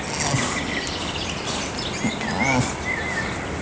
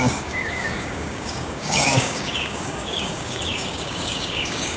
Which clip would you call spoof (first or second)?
second